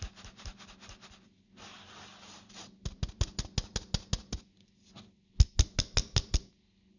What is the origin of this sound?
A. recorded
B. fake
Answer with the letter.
A